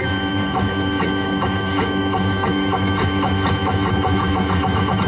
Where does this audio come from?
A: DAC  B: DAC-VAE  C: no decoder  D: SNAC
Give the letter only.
B